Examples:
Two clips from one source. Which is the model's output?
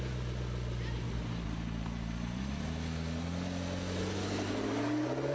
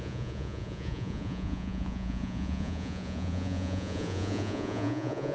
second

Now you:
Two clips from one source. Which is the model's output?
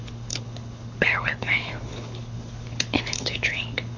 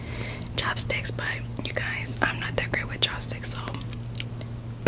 first